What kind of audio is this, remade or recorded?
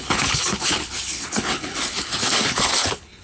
remade